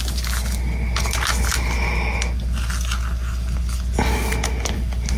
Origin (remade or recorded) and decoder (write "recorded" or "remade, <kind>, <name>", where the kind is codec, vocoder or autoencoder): recorded